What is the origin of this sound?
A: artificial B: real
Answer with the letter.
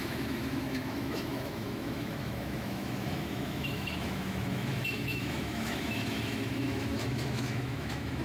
A